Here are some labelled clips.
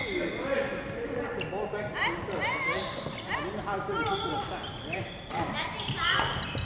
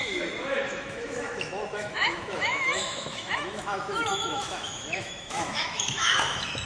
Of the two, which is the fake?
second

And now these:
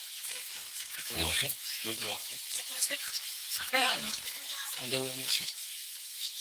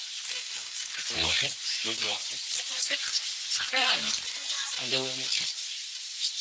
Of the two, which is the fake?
first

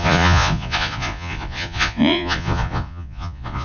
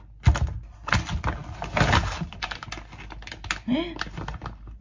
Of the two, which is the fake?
first